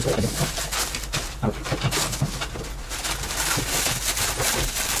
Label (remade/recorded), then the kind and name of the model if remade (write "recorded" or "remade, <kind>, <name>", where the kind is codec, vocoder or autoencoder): recorded